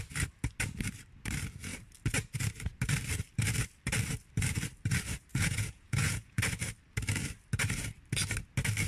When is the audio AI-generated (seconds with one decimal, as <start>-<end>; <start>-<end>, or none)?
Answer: 5.3-6.4